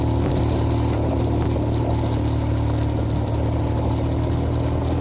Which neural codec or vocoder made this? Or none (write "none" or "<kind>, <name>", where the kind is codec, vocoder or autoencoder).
none